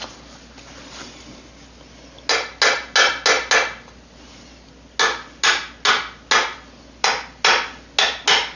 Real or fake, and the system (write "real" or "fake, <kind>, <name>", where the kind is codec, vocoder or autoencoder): real